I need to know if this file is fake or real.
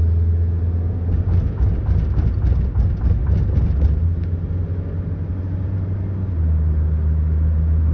real